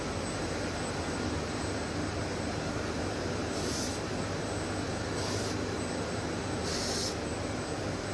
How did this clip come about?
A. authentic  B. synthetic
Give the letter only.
A